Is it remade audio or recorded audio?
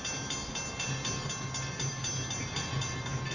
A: recorded